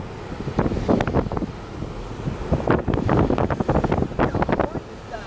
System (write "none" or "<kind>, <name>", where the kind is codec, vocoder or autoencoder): none